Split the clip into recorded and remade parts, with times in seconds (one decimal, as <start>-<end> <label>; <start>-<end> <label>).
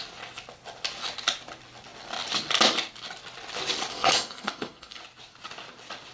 0.0-3.9 recorded; 3.9-5.0 remade; 5.0-6.1 recorded